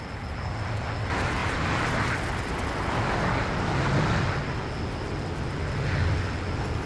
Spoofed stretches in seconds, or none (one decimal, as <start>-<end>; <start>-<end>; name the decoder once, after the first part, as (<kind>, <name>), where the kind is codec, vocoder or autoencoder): none